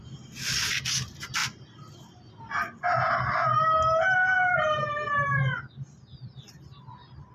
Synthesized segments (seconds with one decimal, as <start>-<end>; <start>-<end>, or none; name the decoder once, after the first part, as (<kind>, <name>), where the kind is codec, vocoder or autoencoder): none